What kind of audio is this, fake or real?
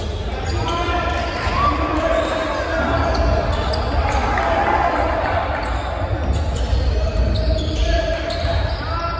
real